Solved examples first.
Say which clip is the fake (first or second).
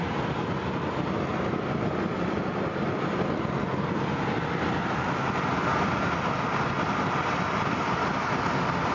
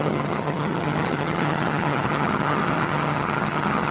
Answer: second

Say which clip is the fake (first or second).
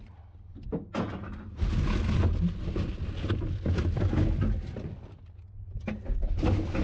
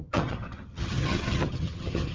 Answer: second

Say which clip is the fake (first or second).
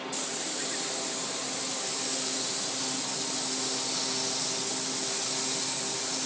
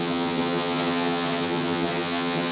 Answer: second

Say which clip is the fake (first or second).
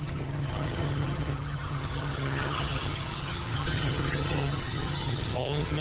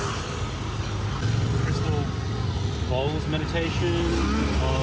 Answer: first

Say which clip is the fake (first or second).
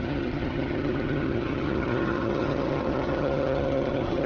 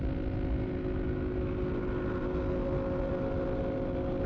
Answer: first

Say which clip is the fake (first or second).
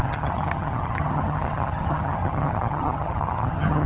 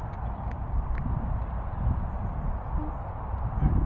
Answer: first